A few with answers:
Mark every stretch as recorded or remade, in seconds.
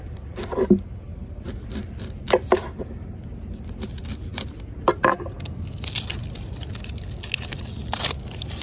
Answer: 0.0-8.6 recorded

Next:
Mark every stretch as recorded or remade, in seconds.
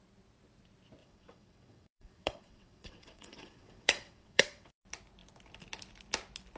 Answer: 0.0-1.0 recorded; 1.0-4.7 remade; 4.7-6.6 recorded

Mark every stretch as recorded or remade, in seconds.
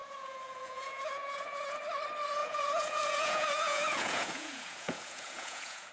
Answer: 0.0-1.8 remade; 1.8-2.4 recorded; 2.4-5.9 remade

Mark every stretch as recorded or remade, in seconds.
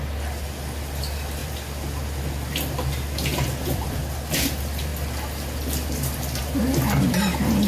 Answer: 0.0-1.4 recorded; 1.4-2.0 remade; 2.0-3.3 recorded; 3.3-4.0 remade; 4.0-7.7 recorded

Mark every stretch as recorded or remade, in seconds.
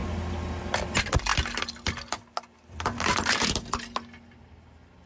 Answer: 0.0-5.1 recorded